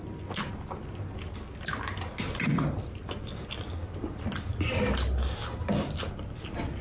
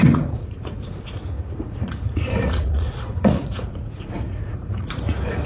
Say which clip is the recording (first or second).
first